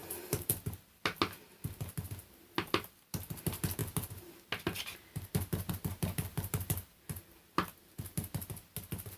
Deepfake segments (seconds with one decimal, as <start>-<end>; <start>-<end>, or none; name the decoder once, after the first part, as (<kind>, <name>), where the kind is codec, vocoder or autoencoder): 0.0-0.5 (vocoder, BigVGAN v2); 6.3-7.4